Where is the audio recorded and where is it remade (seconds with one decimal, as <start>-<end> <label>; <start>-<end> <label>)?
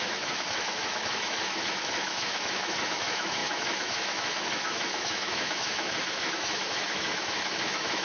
0.0-8.0 remade